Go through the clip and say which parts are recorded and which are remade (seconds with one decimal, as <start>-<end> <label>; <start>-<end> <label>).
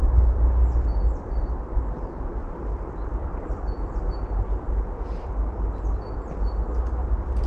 0.0-3.1 recorded; 3.1-3.9 remade; 3.9-7.5 recorded